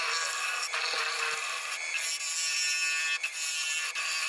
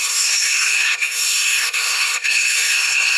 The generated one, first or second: second